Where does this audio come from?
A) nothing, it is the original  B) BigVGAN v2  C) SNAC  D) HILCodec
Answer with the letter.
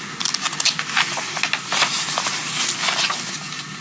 A